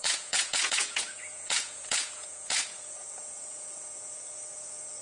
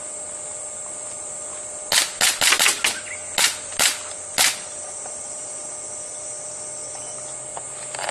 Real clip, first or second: second